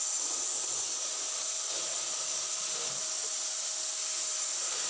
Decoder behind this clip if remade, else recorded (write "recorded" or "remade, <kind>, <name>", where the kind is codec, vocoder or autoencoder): recorded